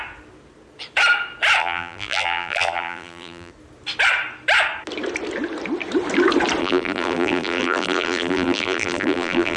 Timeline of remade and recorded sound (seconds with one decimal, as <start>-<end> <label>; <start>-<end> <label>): 0.0-1.6 recorded; 1.6-3.5 remade; 3.5-6.6 recorded; 6.6-9.6 remade